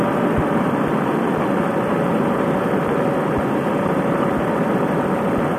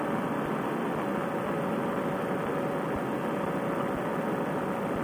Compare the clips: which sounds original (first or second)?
second